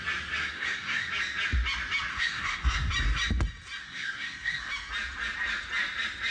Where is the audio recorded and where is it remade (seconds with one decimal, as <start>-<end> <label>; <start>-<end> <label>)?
0.0-0.4 recorded; 0.4-1.1 remade; 1.1-2.1 recorded; 2.1-2.9 remade; 2.9-3.8 recorded; 3.8-4.7 remade; 4.7-6.3 recorded